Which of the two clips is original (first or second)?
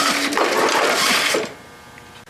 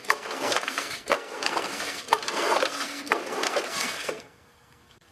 first